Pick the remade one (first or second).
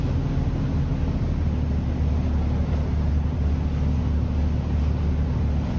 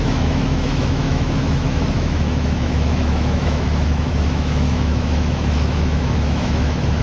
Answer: second